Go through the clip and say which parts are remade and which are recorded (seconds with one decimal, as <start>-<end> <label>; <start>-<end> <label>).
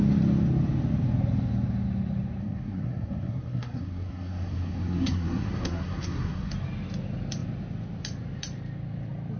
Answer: 0.0-2.4 recorded; 2.4-6.5 remade; 6.5-9.4 recorded